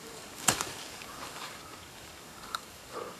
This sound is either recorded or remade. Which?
remade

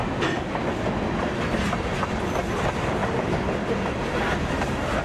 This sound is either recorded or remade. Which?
recorded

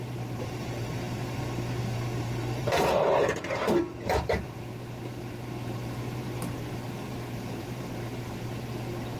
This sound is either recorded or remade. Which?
remade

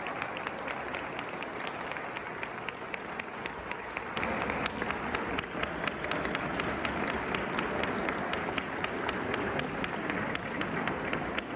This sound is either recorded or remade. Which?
recorded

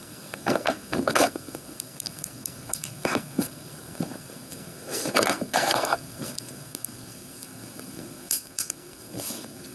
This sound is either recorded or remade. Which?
remade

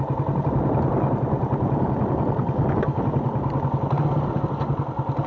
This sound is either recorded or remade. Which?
recorded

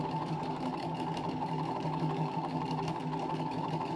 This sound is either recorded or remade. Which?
remade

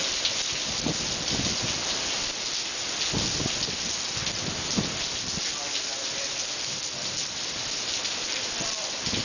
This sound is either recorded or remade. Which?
recorded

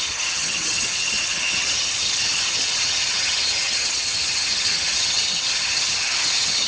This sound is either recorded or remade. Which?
remade